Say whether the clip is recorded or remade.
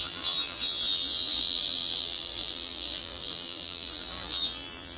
remade